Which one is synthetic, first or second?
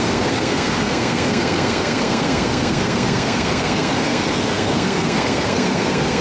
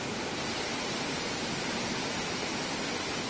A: first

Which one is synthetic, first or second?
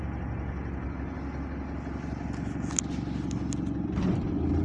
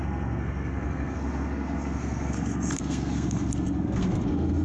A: second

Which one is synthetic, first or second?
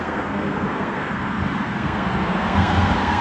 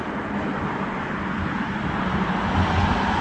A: first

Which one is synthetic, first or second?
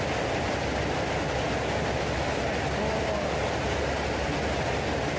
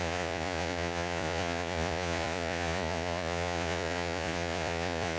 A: second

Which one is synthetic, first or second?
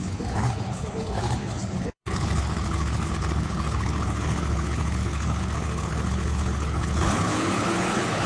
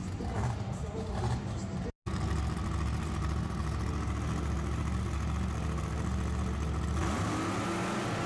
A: first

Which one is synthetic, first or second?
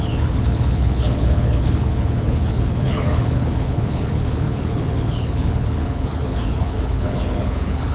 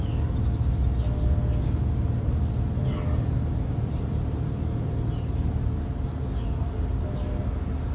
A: first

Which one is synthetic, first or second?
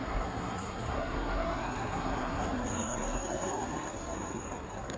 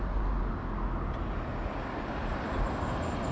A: first